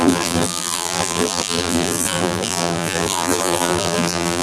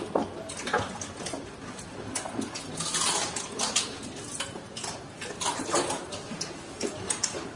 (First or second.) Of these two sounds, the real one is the second